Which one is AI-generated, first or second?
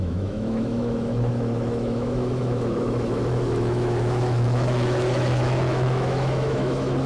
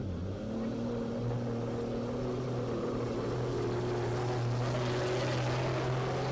first